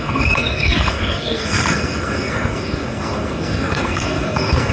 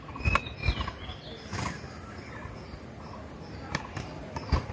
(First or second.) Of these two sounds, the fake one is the first